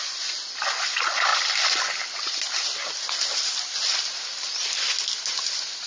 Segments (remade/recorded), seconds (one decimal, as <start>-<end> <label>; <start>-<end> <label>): 0.0-5.9 recorded